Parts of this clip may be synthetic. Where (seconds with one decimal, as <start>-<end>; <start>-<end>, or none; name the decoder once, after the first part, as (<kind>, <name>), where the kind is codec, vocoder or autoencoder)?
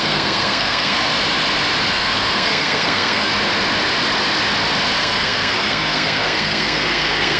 0.0-1.1 (codec, SNAC); 1.9-3.3; 5.0-7.4